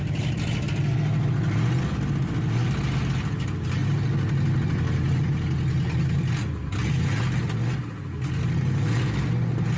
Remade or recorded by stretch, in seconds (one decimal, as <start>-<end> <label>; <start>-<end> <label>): 0.0-9.8 recorded